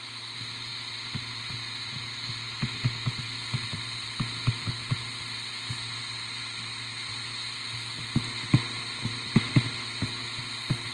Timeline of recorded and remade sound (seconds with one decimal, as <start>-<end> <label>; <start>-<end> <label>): 0.0-10.9 recorded